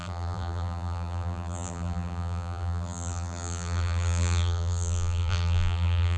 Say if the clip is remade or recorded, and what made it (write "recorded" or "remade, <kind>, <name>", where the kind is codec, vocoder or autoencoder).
remade, vocoder, BigVGAN v2